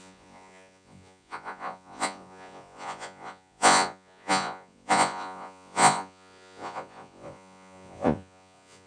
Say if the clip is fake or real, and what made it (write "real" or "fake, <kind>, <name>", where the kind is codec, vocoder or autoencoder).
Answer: fake, vocoder, Vocos